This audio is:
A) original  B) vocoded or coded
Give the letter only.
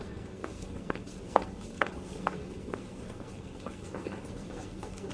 B